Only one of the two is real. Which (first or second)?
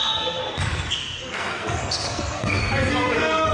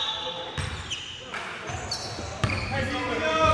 second